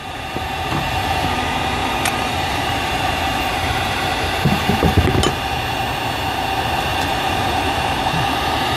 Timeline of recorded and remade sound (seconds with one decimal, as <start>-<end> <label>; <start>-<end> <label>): 0.0-1.2 remade; 1.2-1.8 recorded; 1.8-4.0 remade; 4.0-6.9 recorded; 6.9-8.8 remade